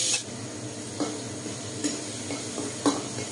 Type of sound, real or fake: real